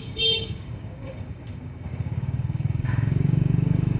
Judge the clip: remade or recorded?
remade